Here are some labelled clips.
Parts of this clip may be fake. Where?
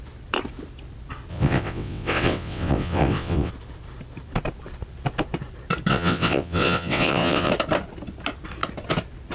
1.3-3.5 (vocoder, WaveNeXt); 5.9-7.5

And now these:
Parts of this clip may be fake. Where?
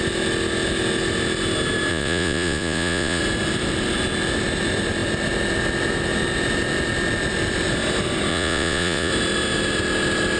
1.9-3.2 (vocoder, Vocos); 8.3-9.1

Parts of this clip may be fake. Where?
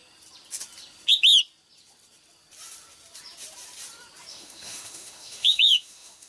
4.3-6.3 (autoencoder, DAC-VAE)